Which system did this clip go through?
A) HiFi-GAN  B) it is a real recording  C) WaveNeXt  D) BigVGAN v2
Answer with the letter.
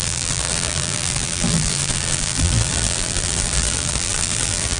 D